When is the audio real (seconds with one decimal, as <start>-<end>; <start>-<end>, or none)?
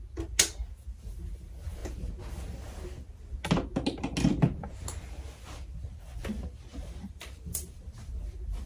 0.0-6.7; 7.8-8.7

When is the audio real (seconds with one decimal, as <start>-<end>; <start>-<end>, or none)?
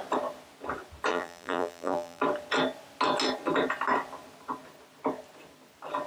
0.0-1.1; 2.2-6.1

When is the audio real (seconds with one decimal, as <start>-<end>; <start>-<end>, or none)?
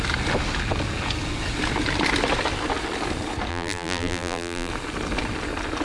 0.0-3.5; 4.7-5.8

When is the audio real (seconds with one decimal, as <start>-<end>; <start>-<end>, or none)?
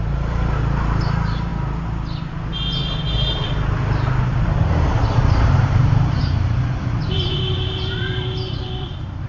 1.5-4.3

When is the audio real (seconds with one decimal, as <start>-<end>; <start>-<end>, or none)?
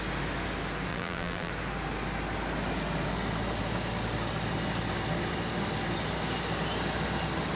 0.0-0.9; 1.5-7.6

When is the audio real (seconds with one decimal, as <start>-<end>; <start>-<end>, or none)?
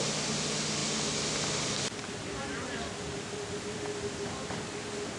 0.0-0.8; 3.9-5.2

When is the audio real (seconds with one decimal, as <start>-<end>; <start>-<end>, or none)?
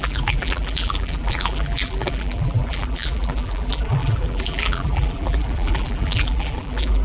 none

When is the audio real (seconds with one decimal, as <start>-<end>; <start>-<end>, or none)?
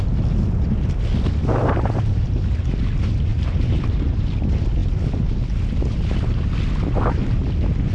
0.0-1.5; 2.2-3.3; 4.3-7.9